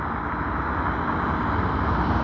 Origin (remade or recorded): recorded